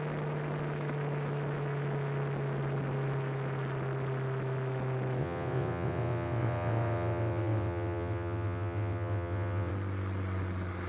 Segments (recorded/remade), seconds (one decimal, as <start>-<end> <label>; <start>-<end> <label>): 0.0-5.2 recorded; 5.2-9.7 remade; 9.7-10.9 recorded